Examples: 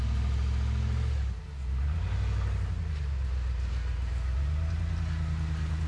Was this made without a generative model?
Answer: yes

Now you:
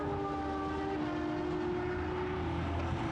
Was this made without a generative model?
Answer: yes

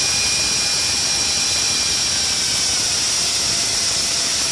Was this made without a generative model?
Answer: yes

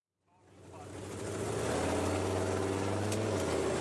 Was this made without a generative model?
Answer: yes